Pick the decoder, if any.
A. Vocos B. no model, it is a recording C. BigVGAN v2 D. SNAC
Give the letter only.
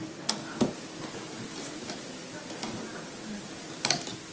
B